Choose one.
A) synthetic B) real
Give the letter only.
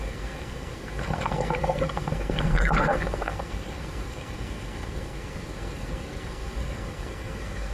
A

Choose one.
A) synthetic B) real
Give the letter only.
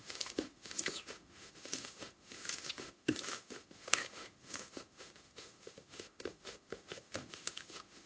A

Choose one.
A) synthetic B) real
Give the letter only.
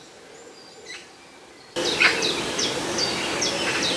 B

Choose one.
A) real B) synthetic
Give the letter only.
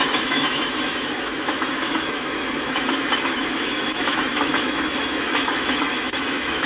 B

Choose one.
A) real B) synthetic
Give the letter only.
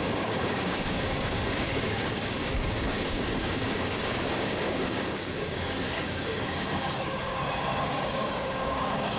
B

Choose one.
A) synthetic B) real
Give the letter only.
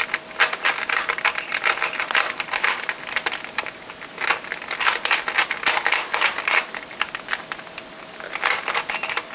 B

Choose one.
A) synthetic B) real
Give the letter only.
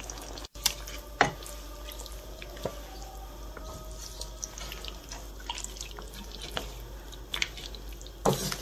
A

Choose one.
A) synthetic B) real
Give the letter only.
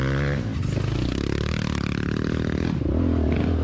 B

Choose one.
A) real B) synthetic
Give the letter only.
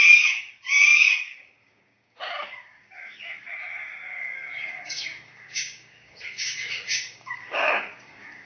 B